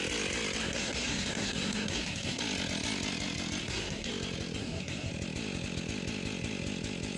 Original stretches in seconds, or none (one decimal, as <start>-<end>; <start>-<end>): 0.0-0.6; 2.4-3.6; 4.1-4.6; 5.1-7.2

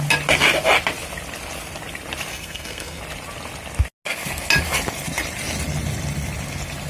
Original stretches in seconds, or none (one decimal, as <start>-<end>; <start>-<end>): 0.0-2.3; 3.0-6.9

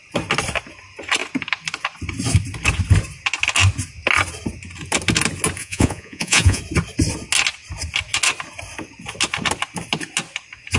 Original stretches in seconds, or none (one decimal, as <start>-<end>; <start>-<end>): 0.0-5.6; 6.6-10.8